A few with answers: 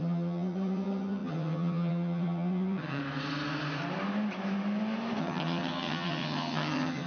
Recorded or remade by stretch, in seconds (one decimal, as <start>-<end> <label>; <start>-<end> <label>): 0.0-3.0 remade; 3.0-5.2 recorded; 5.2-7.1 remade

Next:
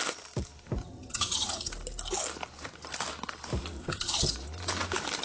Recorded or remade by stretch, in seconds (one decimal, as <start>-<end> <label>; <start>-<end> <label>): 0.0-0.8 recorded; 0.8-1.7 remade; 1.7-3.8 recorded; 3.8-4.3 remade; 4.3-5.2 recorded

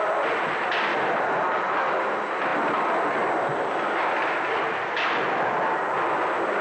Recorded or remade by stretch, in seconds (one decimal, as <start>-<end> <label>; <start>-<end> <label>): 0.0-6.6 recorded